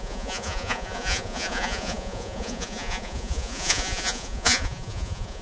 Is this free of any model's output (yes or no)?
no